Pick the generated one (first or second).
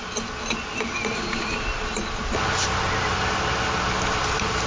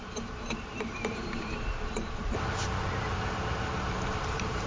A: second